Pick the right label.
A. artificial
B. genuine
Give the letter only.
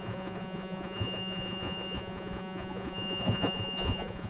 A